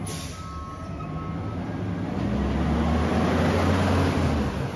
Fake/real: real